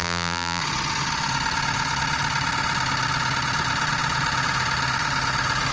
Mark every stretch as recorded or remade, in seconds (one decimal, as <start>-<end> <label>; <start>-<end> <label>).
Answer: 0.0-0.6 remade; 0.6-5.7 recorded